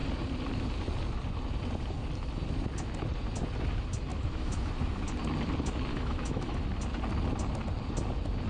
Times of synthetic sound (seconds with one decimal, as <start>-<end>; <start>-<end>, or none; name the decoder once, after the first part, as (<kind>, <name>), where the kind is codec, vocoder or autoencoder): 4.1-4.7 (autoencoder, DAC-VAE); 5.9-6.6